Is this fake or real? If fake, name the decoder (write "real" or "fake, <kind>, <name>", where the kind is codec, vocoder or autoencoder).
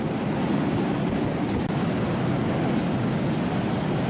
real